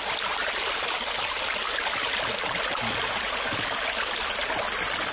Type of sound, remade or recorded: recorded